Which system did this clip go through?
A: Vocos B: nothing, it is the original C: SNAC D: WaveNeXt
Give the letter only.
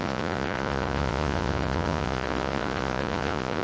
A